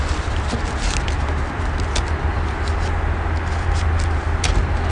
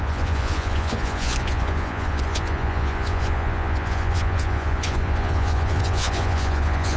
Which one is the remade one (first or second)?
second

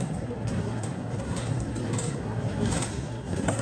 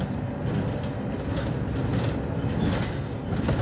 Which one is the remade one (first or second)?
first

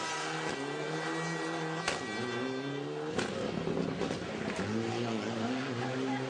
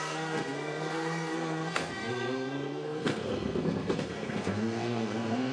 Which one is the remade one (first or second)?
second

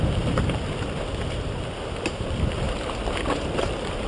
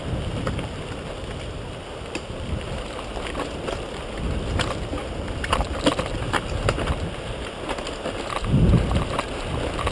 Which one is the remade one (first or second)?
first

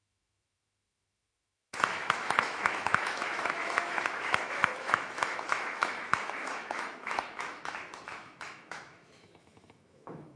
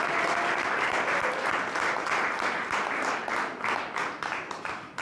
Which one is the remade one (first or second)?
first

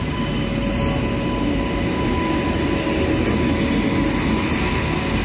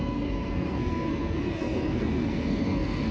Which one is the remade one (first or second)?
second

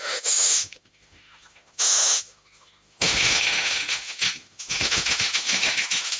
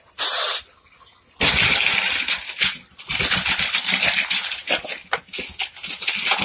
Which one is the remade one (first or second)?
first